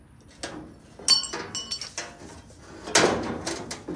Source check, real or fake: real